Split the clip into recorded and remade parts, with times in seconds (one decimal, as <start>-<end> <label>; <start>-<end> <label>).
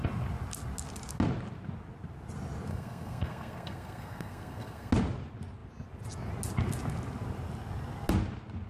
0.0-2.7 recorded; 2.7-4.9 remade; 4.9-8.7 recorded